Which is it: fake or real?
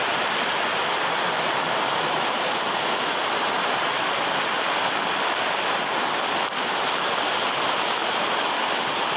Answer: real